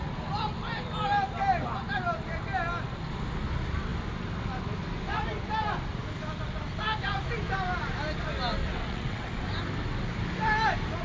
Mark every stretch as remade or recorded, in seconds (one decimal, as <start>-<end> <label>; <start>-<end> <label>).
0.0-8.7 recorded; 8.7-9.3 remade; 9.3-11.0 recorded